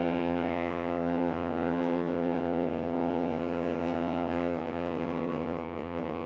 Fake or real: fake